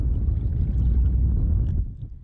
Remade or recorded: recorded